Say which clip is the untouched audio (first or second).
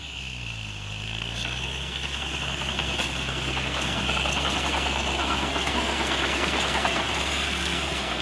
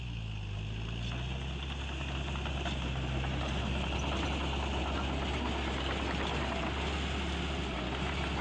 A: second